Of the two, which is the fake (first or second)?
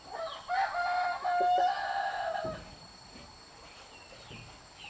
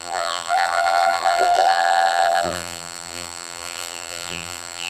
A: second